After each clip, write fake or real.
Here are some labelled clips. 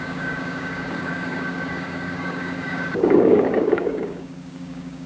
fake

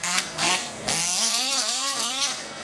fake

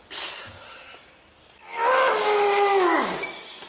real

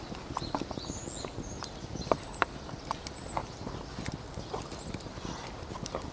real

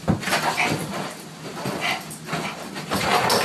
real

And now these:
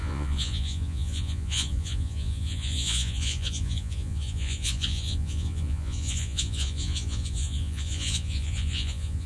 fake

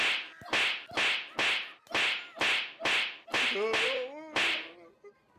real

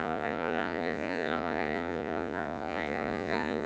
fake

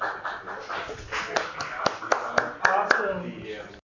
real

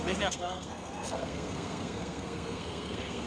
fake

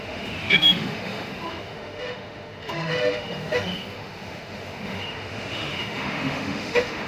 fake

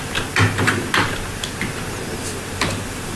real